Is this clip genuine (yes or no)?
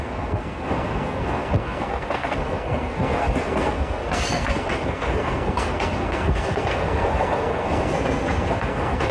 no